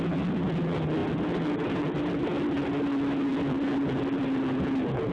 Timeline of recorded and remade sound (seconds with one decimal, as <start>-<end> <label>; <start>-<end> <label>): 0.0-5.1 recorded